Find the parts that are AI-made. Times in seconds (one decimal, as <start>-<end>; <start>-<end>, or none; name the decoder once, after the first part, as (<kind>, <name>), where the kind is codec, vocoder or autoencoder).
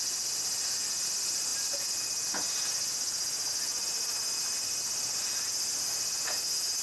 none